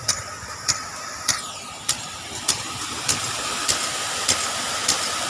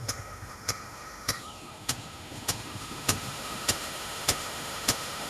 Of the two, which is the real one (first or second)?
first